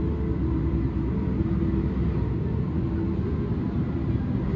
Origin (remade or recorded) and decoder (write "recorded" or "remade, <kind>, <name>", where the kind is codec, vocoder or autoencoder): recorded